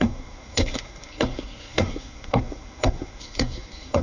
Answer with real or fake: fake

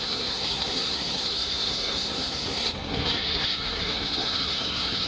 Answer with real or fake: fake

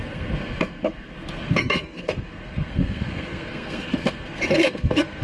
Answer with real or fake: fake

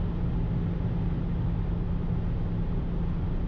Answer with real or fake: real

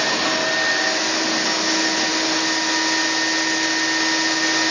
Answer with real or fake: real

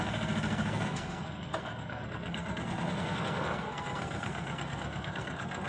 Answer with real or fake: fake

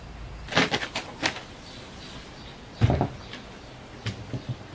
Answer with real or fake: real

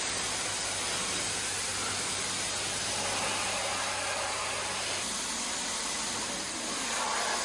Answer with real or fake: real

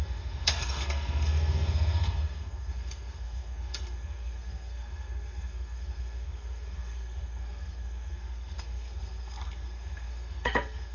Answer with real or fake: fake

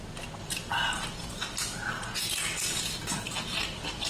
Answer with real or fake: real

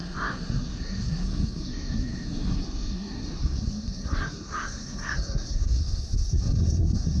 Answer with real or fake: fake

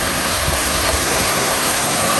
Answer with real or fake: fake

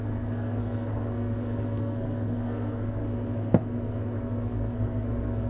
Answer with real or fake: fake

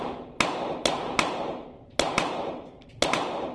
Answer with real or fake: real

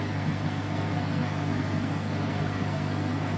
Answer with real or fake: fake